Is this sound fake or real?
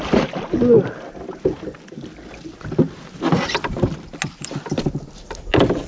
real